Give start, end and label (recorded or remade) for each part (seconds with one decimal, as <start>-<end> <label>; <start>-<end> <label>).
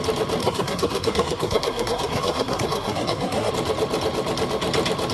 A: 0.0-0.4 recorded; 0.4-3.5 remade; 3.5-5.1 recorded